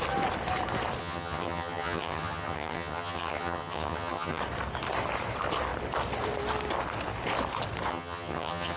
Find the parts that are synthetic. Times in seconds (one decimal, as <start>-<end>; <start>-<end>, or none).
1.0-4.4; 7.9-8.8